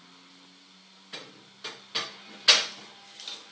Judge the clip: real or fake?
real